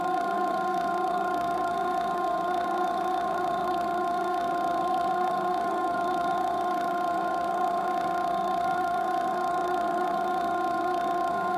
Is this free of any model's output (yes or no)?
no